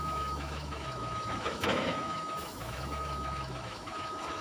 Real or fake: fake